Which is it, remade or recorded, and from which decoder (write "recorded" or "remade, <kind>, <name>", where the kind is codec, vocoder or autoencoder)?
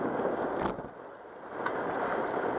recorded